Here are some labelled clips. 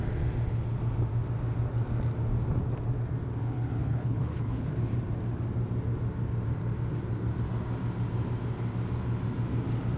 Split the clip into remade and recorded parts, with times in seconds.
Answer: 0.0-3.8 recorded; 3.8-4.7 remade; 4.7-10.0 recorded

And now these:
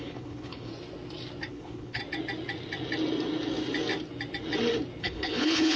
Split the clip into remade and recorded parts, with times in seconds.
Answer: 0.0-0.7 remade; 0.7-1.5 recorded; 1.5-2.0 remade; 2.0-5.0 recorded; 5.0-5.8 remade